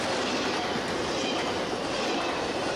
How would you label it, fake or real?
real